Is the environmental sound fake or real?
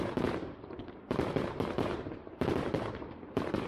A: fake